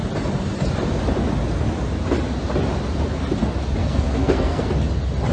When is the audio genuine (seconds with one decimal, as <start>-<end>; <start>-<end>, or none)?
0.0-3.8; 4.7-5.3